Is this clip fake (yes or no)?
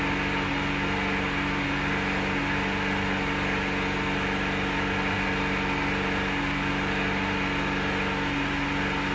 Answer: no